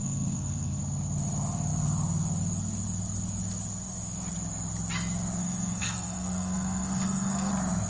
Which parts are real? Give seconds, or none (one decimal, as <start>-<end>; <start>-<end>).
0.8-5.4; 7.5-7.9